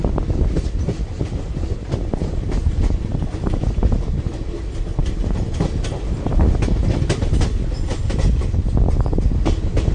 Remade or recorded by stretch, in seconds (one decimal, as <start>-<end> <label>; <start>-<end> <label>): 0.0-9.9 recorded